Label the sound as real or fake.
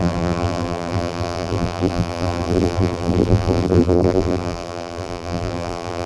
fake